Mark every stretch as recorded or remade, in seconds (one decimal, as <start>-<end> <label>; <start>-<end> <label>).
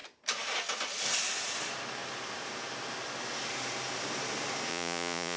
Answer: 0.0-4.7 recorded; 4.7-5.4 remade